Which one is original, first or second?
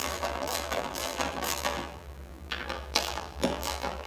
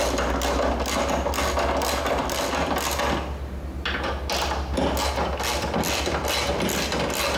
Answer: second